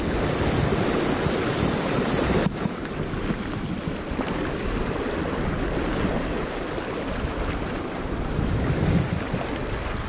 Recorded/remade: recorded